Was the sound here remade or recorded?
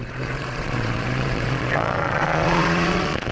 remade